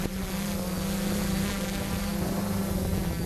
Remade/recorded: recorded